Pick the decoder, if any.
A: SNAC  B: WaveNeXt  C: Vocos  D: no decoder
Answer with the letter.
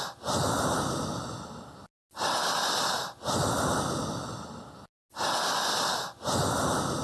D